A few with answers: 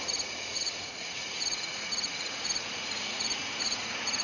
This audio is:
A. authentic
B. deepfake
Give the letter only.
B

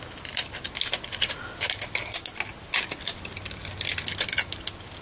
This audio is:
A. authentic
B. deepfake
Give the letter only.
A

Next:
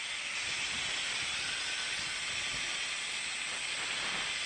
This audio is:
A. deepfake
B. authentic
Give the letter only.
B